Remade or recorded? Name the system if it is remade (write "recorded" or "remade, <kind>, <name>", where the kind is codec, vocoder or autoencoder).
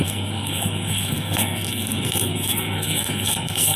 remade, codec, SNAC